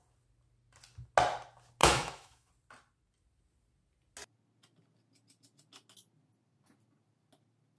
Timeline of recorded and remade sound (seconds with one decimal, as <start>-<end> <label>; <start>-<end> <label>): 0.0-1.8 recorded; 1.8-2.5 remade; 2.5-7.8 recorded